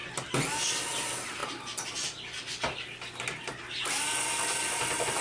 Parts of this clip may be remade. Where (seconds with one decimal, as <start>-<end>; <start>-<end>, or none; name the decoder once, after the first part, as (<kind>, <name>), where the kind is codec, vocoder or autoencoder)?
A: none